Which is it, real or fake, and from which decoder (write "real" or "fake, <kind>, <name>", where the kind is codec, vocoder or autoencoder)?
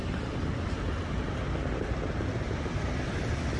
real